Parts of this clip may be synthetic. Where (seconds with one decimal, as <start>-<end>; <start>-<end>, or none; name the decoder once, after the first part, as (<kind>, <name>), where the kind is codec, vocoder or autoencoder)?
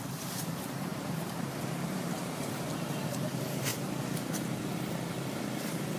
0.0-3.7 (vocoder, BigVGAN v2); 5.5-6.0